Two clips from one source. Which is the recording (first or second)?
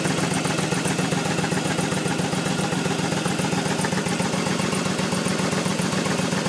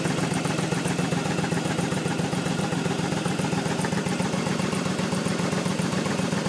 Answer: first